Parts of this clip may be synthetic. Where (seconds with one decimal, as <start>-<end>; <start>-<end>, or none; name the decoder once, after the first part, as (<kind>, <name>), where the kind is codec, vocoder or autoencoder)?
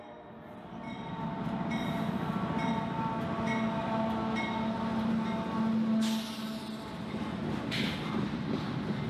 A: none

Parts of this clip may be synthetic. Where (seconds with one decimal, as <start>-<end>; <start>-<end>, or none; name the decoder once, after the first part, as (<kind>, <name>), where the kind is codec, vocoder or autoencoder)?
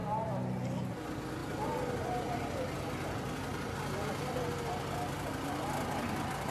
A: none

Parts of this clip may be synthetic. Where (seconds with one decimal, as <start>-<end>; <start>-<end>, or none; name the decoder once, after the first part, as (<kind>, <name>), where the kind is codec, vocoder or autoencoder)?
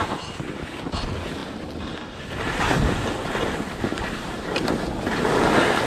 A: 3.9-4.4 (vocoder, BigVGAN v2)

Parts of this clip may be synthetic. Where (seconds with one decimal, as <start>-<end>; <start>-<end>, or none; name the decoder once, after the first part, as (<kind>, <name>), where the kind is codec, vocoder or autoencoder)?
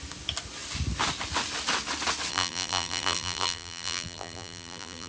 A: 2.3-5.1 (vocoder, BigVGAN v2)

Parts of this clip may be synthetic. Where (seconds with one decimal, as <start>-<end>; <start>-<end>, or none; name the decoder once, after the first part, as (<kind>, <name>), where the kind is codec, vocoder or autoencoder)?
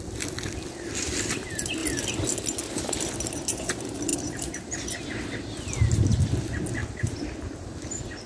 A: 4.1-5.1 (vocoder, BigVGAN v2)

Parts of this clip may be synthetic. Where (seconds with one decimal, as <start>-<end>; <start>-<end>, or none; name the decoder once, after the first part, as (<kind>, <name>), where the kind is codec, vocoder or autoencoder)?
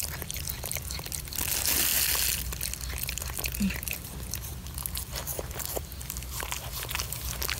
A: 5.3-6.7 (vocoder, BigVGAN v2)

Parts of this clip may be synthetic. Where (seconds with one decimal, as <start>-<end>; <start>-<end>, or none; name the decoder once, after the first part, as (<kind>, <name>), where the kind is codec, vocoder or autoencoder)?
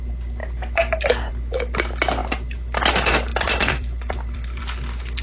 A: 3.3-4.6 (vocoder, BigVGAN v2)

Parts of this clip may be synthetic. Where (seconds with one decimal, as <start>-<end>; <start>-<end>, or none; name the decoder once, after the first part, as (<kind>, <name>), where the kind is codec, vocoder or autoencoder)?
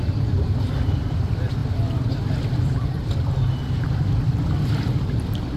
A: 0.0-5.6 (vocoder, BigVGAN v2)